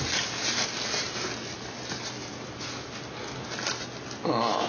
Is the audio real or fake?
real